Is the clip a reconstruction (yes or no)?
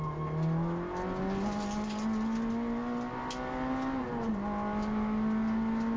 no